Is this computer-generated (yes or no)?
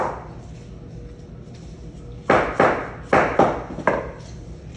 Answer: no